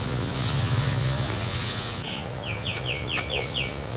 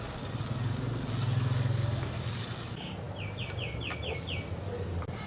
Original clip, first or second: second